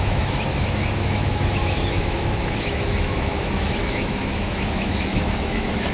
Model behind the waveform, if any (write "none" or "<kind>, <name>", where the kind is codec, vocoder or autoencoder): autoencoder, DAC-VAE